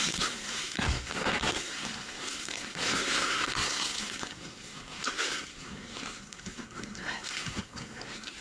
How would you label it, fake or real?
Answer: fake